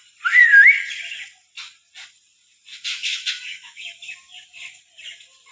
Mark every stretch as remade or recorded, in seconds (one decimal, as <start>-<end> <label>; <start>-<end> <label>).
0.0-2.7 recorded; 2.7-4.8 remade; 4.8-5.5 recorded